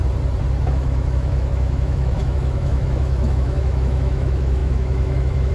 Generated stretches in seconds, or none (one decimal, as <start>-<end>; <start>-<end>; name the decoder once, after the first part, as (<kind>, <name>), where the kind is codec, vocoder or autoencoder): 0.6-5.5 (autoencoder, DAC-VAE)